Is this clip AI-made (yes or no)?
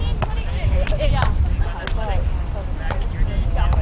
no